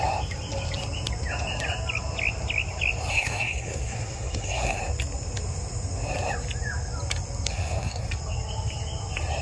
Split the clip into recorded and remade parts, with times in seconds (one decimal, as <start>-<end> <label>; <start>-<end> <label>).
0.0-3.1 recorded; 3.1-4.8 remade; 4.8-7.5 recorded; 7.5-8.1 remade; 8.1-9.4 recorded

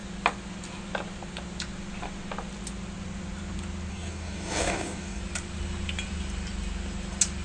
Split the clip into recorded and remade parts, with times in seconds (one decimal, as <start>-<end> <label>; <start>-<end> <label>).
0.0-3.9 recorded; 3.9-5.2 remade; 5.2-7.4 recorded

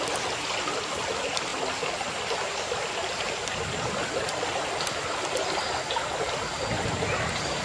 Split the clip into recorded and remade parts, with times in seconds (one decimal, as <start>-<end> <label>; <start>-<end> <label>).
0.0-7.6 recorded

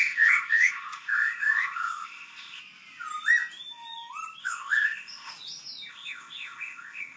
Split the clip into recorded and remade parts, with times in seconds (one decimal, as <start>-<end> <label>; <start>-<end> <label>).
0.0-2.6 remade; 2.6-4.4 recorded; 4.4-5.3 remade; 5.3-5.9 recorded; 5.9-7.2 remade

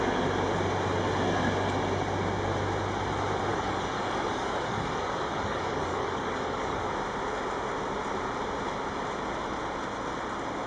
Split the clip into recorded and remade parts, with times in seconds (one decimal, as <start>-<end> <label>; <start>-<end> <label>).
0.0-3.5 recorded; 3.5-6.9 remade; 6.9-10.7 recorded

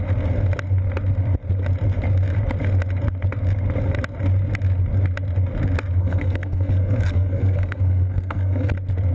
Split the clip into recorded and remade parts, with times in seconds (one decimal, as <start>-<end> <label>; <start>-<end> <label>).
0.0-6.0 recorded; 6.0-8.7 remade; 8.7-9.1 recorded

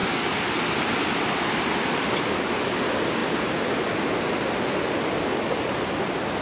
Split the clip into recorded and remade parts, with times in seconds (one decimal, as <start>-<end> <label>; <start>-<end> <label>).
0.0-6.4 recorded